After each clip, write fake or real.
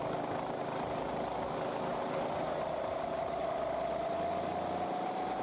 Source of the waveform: real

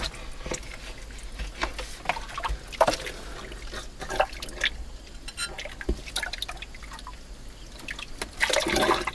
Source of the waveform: real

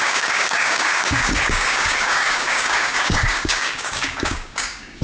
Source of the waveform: fake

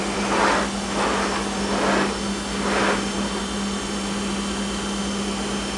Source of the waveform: real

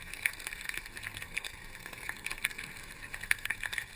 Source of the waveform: fake